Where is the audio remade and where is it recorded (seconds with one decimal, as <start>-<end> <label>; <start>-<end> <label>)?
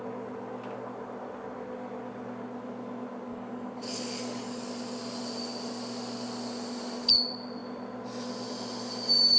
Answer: 0.0-3.3 recorded; 3.3-4.7 remade; 4.7-9.4 recorded